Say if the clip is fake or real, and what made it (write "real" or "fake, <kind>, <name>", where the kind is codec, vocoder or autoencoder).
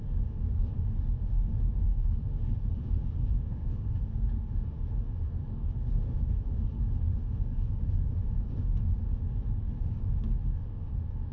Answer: fake, autoencoder, DAC-VAE